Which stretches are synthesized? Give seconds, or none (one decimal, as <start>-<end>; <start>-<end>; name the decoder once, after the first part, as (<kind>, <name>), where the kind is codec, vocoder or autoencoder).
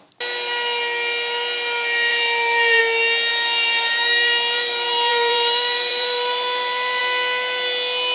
2.1-2.8 (vocoder, BigVGAN v2); 3.3-7.0